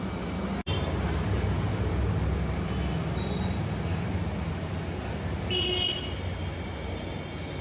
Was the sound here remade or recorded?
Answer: recorded